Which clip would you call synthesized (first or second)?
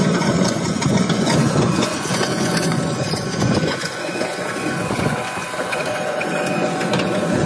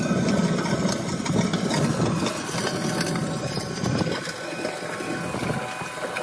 first